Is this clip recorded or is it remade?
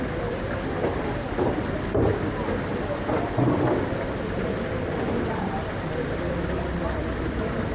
recorded